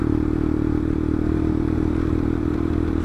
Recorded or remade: remade